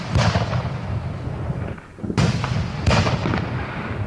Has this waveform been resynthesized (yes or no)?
no